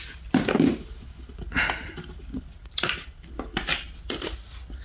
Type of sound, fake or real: real